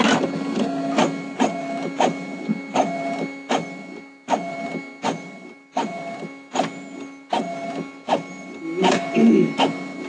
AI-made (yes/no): no